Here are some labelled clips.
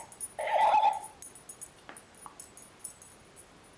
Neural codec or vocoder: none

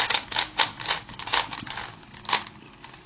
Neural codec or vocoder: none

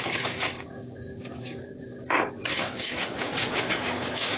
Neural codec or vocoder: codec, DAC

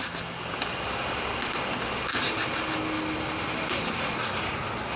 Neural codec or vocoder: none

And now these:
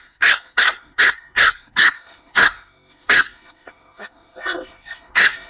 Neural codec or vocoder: codec, SNAC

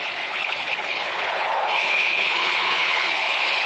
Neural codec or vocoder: codec, HILCodec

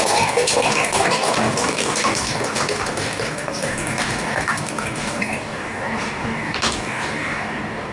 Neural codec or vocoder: codec, DAC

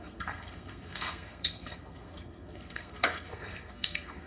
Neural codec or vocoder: codec, SNAC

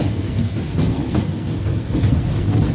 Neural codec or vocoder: codec, SNAC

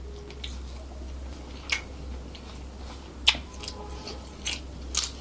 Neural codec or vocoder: none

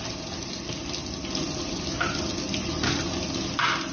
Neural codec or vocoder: none